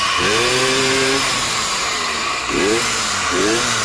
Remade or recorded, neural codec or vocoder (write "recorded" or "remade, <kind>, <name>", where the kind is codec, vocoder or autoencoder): remade, vocoder, BigVGAN v2